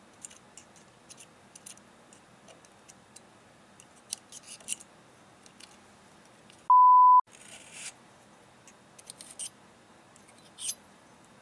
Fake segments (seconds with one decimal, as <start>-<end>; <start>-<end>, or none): none